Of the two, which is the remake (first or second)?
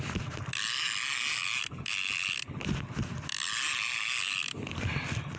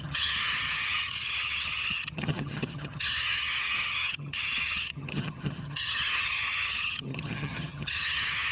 second